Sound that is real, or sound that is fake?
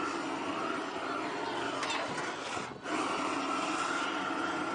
real